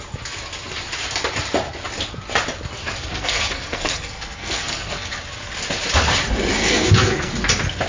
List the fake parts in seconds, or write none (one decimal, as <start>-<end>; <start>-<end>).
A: 2.8-5.2; 6.5-7.3